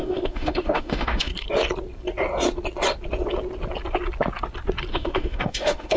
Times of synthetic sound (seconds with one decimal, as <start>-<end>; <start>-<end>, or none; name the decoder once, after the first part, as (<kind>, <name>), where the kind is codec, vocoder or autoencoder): 0.0-1.3 (autoencoder, DAC-VAE); 4.9-6.0